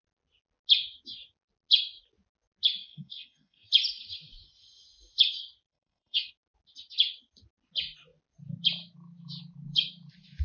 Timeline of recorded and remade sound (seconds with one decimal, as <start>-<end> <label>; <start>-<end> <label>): 0.0-2.8 recorded; 2.8-3.7 remade; 3.7-5.7 recorded; 5.7-6.3 remade; 6.3-10.4 recorded